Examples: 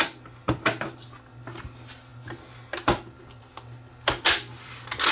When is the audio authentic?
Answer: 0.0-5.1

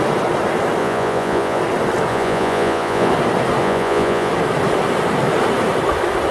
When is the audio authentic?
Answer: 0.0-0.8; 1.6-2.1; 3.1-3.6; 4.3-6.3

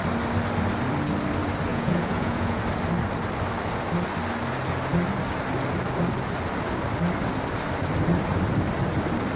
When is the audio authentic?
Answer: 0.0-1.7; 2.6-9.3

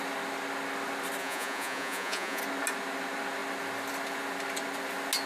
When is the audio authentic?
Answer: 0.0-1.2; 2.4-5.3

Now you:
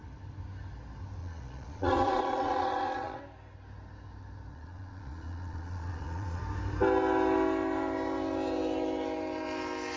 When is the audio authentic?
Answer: 0.0-1.2; 3.2-4.5; 6.4-10.0